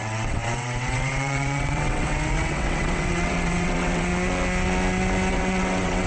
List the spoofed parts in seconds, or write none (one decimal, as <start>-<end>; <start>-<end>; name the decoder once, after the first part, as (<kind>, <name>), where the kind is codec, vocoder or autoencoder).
0.0-4.1 (vocoder, WaveNeXt); 5.3-6.1